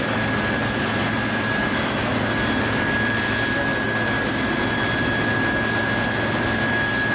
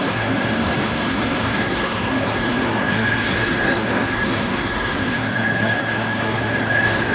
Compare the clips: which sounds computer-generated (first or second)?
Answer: second